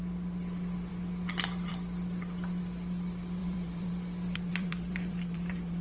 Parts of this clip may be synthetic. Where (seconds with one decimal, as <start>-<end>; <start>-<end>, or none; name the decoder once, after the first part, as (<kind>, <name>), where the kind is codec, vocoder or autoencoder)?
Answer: 3.4-3.9 (vocoder, BigVGAN v2); 4.5-5.8